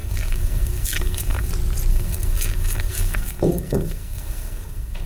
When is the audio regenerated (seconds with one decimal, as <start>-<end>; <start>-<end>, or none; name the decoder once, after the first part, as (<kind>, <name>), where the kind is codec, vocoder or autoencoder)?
0.0-1.5 (codec, SNAC); 1.9-5.1